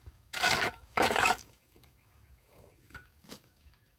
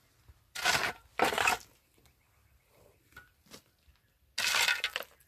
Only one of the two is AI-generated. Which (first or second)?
first